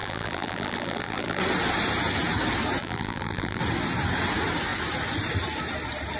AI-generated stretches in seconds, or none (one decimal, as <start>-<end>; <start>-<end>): 0.0-1.4; 2.8-3.6